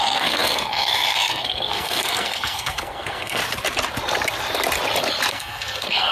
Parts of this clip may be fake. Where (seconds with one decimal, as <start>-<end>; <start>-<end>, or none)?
0.0-3.4; 5.3-6.1